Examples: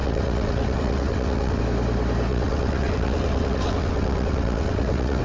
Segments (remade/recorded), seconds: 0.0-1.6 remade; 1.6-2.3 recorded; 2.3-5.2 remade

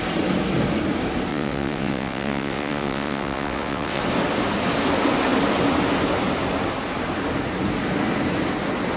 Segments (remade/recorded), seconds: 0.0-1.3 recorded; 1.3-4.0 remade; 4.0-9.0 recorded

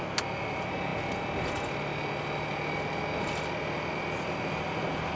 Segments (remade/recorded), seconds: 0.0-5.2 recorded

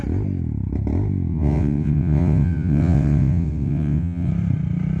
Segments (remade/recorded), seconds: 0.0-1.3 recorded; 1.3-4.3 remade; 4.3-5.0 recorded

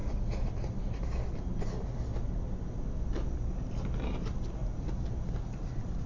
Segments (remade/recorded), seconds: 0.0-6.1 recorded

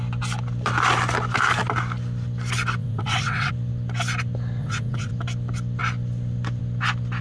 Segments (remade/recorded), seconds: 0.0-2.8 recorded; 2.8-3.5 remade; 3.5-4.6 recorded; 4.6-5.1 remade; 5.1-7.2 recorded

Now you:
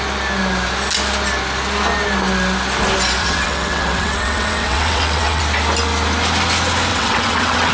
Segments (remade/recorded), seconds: 0.0-3.2 recorded; 3.2-5.4 remade; 5.4-6.9 recorded; 6.9-7.7 remade